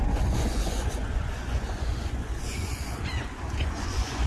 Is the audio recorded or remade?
remade